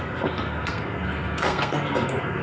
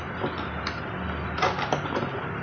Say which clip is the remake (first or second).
first